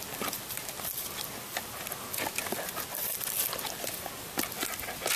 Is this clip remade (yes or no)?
no